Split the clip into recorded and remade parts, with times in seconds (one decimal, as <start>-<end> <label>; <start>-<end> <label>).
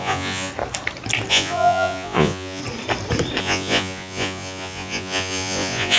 0.0-0.5 remade; 0.5-1.3 recorded; 1.3-2.6 remade; 2.6-3.4 recorded; 3.4-6.0 remade